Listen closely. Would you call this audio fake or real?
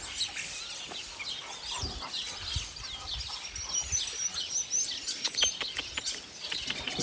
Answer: real